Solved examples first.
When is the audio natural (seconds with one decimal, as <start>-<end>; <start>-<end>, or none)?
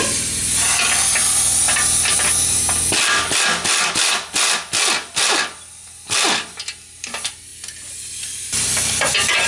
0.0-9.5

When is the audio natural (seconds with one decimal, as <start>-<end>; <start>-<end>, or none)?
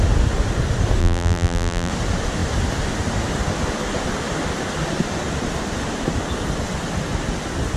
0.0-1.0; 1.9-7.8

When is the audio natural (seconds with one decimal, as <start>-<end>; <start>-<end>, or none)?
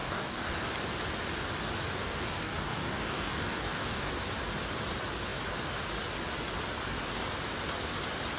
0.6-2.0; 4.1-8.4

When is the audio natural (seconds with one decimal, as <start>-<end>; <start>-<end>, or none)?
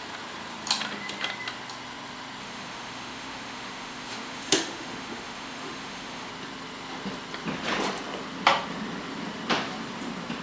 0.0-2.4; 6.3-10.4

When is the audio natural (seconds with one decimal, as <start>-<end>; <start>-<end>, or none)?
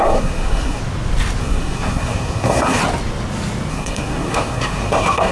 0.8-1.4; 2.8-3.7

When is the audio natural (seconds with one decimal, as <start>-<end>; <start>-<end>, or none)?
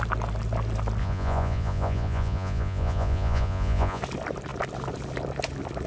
0.0-1.0; 4.0-5.9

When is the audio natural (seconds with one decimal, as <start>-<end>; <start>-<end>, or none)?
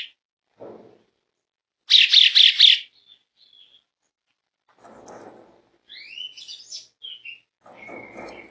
0.0-8.5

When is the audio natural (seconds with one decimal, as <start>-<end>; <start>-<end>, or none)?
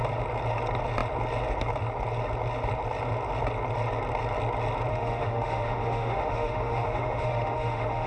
0.0-4.9